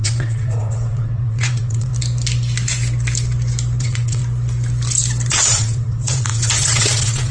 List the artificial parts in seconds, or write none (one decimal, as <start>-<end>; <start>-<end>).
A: 0.0-1.9; 3.8-4.2; 5.3-7.3